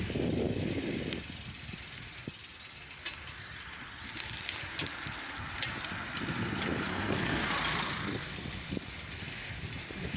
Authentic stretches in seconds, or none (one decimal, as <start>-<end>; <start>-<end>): 0.0-6.9; 7.5-10.2